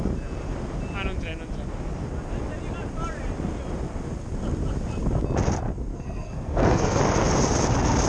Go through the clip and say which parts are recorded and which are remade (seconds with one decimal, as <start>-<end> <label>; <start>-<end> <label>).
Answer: 0.0-5.9 recorded; 5.9-7.0 remade; 7.0-8.1 recorded